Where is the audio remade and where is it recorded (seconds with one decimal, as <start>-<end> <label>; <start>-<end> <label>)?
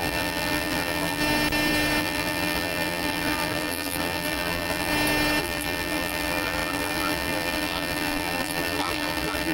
0.0-1.2 remade; 1.2-2.0 recorded; 2.0-4.9 remade; 4.9-5.4 recorded; 5.4-9.5 remade